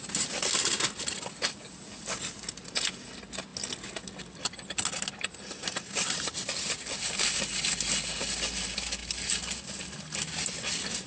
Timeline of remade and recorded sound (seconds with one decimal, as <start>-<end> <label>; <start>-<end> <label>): 0.0-11.1 recorded